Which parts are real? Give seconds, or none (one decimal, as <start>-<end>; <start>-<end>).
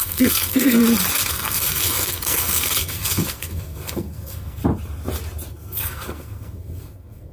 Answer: 0.8-1.3; 4.6-5.5